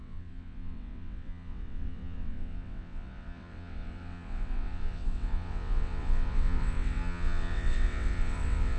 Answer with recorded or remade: remade